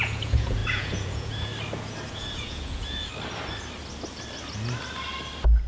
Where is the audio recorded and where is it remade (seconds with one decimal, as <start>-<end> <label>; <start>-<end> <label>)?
0.0-1.5 remade; 1.5-2.1 recorded; 2.1-3.1 remade; 3.1-5.7 recorded